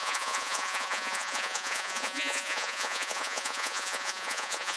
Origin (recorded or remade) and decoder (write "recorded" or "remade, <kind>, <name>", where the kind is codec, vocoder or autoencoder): remade, vocoder, Vocos